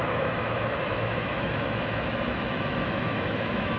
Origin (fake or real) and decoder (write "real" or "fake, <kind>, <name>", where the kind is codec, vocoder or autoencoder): fake, autoencoder, DAC-VAE